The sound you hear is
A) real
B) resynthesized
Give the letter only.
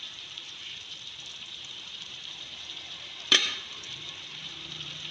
B